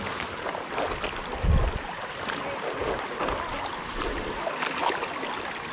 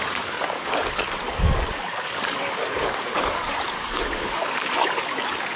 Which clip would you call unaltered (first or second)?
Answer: first